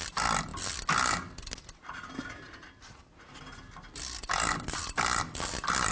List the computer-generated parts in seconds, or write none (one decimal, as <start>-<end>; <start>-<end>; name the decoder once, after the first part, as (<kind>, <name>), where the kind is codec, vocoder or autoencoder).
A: none